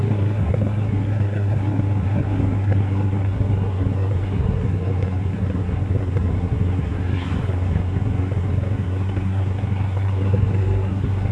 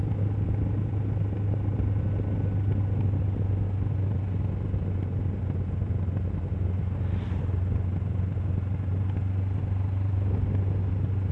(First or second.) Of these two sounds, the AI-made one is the first